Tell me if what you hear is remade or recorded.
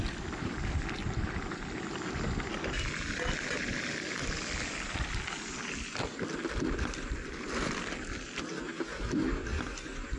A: recorded